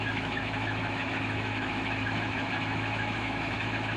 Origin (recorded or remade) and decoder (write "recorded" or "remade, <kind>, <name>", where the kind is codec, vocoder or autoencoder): remade, autoencoder, DAC-VAE